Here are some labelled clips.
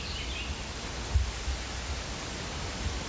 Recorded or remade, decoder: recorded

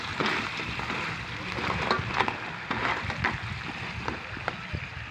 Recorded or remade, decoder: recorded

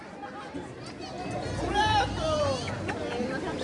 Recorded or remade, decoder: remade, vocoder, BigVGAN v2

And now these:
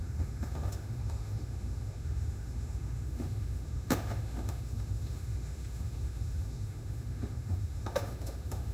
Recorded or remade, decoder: remade, autoencoder, DAC-VAE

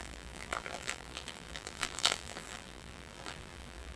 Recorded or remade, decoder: remade, vocoder, BigVGAN v2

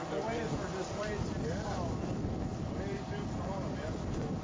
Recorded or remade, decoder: recorded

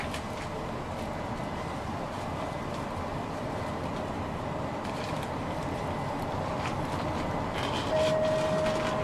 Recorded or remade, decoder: recorded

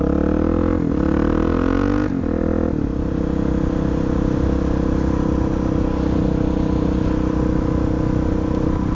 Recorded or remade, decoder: recorded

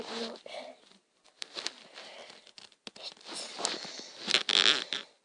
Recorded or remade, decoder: recorded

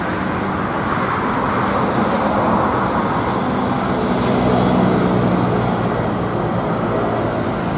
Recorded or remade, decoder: recorded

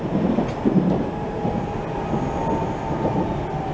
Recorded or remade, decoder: recorded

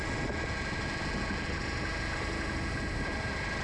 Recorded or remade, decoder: recorded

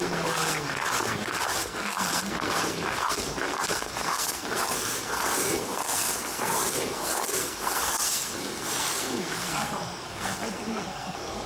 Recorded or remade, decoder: remade, codec, SNAC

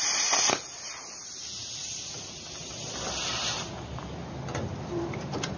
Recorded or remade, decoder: recorded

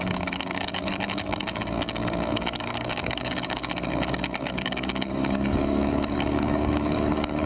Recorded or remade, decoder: remade, codec, DAC